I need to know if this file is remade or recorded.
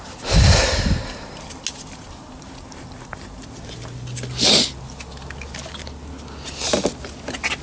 recorded